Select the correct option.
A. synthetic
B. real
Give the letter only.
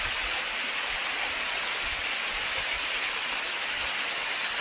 B